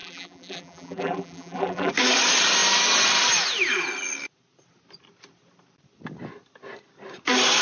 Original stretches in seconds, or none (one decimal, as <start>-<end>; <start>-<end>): 1.9-7.6